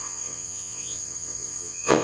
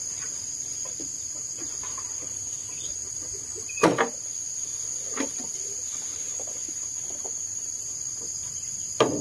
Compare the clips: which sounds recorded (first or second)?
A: second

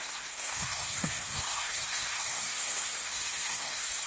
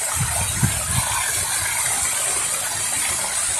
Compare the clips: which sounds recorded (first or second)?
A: second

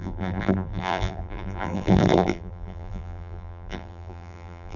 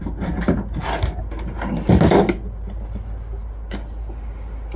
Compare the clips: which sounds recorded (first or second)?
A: second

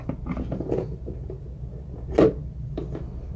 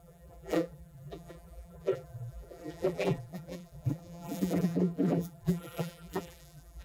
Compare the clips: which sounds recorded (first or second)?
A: first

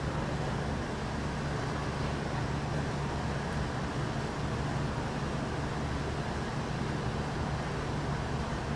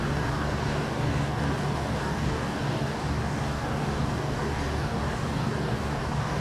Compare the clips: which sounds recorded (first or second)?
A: first